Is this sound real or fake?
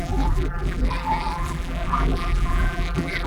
fake